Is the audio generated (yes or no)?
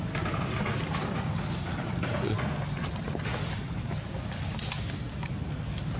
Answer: no